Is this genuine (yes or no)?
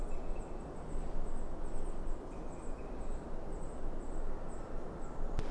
yes